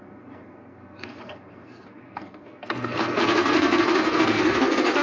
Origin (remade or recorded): remade